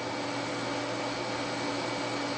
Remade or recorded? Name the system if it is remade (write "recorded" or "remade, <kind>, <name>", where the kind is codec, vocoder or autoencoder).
recorded